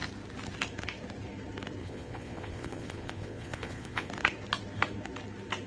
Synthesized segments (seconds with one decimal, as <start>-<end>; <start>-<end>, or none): 1.8-4.1